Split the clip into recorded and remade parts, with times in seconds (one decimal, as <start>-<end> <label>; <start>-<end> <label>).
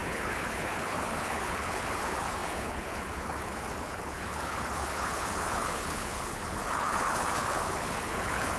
0.0-8.6 remade